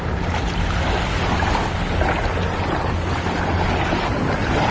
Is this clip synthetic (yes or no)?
no